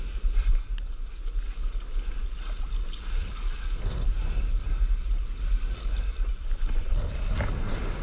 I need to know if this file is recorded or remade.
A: recorded